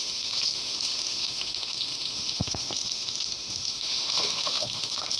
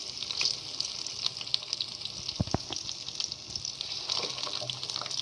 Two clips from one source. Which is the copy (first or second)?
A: first